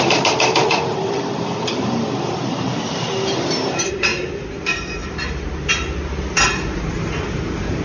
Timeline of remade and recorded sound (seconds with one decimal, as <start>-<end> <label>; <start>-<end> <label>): 0.0-4.1 remade; 4.1-6.9 recorded; 6.9-7.8 remade